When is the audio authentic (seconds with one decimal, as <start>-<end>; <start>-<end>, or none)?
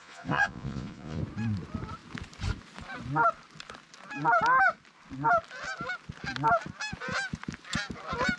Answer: 1.2-8.4